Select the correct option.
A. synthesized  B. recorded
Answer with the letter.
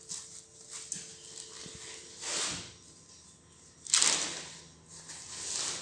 B